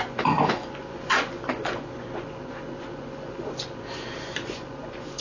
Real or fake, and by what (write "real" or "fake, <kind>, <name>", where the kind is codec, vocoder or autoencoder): fake, vocoder, Vocos